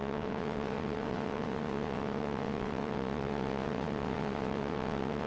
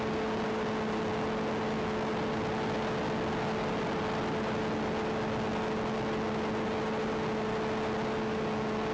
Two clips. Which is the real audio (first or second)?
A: second